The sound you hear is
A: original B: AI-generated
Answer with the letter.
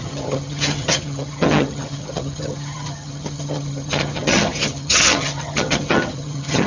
B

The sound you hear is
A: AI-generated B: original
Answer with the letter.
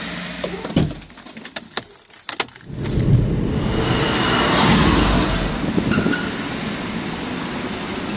B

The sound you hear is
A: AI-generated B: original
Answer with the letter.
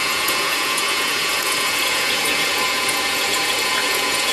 A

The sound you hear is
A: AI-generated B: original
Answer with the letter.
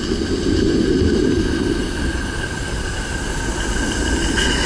B